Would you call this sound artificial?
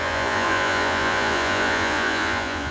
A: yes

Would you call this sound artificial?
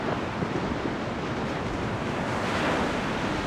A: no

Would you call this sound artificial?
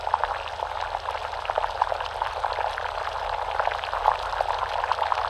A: no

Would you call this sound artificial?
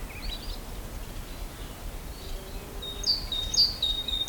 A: no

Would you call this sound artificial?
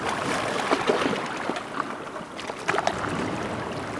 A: no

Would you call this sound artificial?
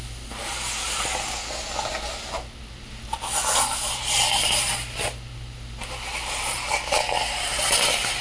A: no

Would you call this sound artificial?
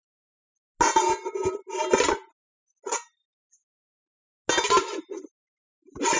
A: no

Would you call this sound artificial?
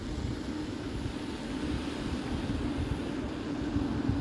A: no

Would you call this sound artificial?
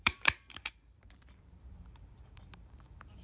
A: yes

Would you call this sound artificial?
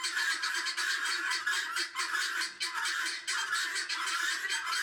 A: no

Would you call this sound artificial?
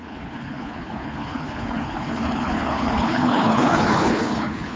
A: yes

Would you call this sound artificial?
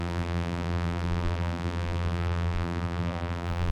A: yes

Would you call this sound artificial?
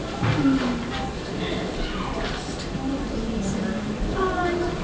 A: no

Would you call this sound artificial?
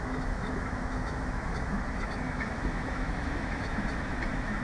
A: yes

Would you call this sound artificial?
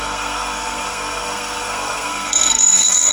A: yes